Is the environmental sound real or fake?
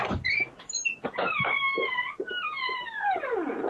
real